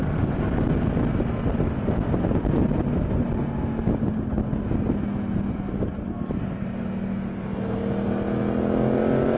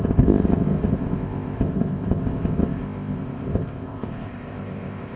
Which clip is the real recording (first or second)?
first